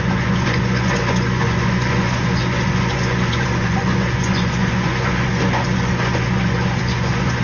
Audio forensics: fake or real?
fake